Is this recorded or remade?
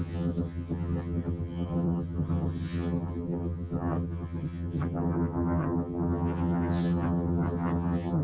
remade